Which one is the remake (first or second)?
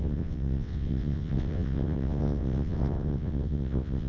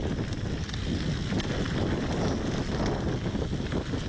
first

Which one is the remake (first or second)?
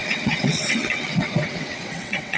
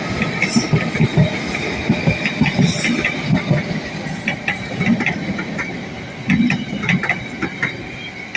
first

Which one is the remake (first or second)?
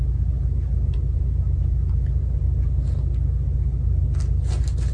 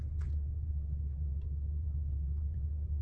second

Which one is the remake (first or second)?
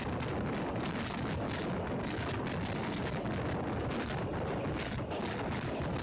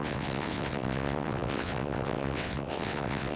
second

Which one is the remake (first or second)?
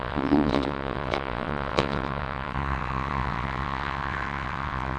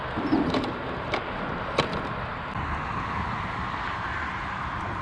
first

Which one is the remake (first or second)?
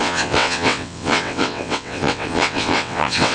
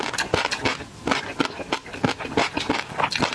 first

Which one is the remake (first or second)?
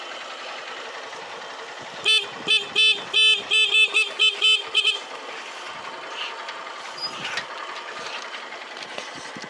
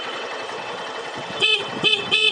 second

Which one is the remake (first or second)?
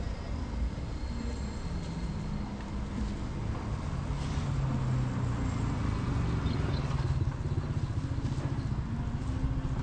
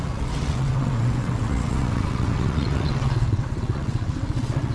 second